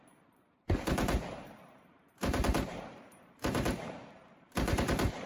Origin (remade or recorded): remade